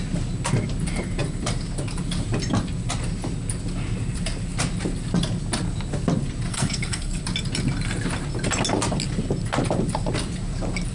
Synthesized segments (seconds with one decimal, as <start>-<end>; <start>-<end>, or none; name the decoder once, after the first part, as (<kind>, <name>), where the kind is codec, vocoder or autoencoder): 6.5-7.2 (codec, SNAC)

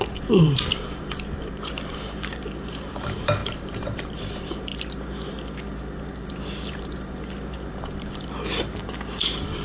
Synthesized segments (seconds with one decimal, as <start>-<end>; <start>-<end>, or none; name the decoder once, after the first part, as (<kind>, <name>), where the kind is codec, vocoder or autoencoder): 0.0-4.7 (vocoder, BigVGAN v2); 5.3-9.6

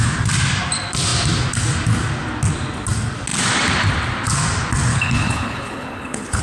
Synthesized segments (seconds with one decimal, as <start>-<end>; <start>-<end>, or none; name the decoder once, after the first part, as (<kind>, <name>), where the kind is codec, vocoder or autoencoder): 4.9-6.4 (codec, HILCodec)

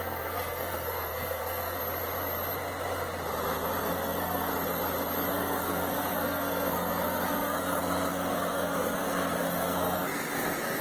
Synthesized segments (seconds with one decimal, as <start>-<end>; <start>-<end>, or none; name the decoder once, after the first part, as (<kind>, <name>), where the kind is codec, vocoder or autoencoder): 0.0-1.8 (codec, SNAC); 3.8-4.5; 5.3-10.8

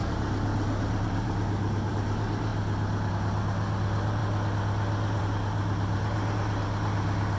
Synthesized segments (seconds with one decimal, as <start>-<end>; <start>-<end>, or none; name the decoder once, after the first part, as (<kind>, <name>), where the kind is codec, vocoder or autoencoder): 0.0-2.5 (vocoder, BigVGAN v2); 3.1-4.2; 5.2-7.4